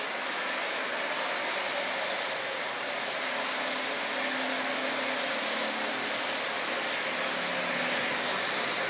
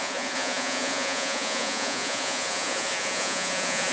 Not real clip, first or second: second